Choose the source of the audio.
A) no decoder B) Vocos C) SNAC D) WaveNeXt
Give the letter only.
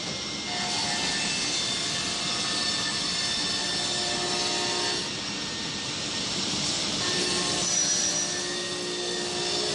A